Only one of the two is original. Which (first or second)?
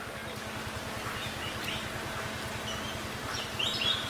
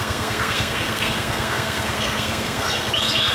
first